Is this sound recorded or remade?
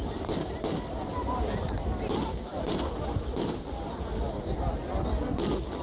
recorded